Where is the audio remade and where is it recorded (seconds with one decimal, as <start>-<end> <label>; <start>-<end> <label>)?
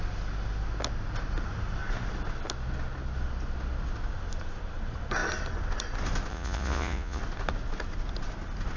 0.0-6.3 recorded; 6.3-7.2 remade; 7.2-8.8 recorded